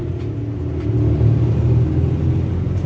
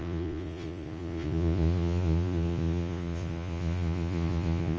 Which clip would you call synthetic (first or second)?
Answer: second